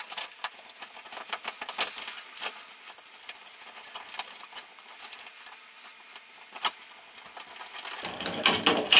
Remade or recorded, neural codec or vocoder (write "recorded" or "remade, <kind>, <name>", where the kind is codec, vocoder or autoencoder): recorded